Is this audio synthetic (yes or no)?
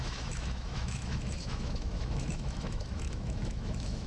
yes